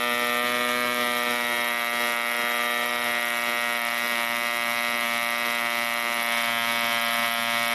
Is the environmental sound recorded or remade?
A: recorded